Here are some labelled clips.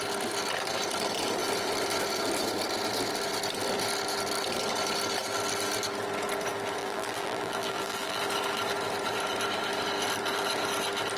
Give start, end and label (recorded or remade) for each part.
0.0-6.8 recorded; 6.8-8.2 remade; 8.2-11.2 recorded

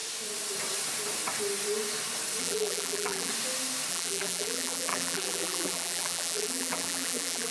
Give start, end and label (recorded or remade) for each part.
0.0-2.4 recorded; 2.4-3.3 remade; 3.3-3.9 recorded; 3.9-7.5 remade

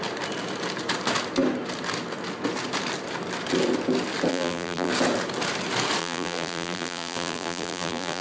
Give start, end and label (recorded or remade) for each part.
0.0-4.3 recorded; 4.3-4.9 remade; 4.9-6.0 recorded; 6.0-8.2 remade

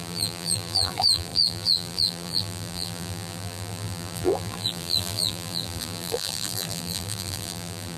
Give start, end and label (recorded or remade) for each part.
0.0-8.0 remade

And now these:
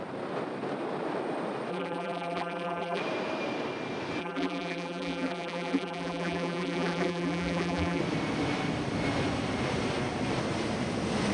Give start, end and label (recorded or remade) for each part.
0.0-1.7 recorded; 1.7-3.0 remade; 3.0-4.2 recorded; 4.2-8.0 remade; 8.0-11.3 recorded

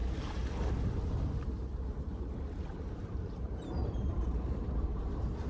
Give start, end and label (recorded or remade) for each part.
0.0-0.5 remade; 0.5-2.1 recorded; 2.1-5.5 remade

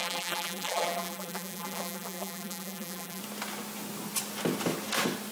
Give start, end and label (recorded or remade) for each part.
0.0-3.2 remade; 3.2-5.3 recorded

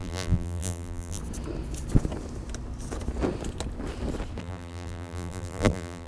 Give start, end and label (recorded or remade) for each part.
0.0-1.2 remade; 1.2-4.4 recorded; 4.4-6.1 remade